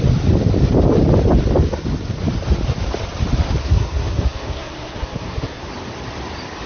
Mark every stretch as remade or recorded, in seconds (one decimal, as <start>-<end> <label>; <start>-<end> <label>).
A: 0.0-3.6 recorded; 3.6-5.6 remade; 5.6-6.7 recorded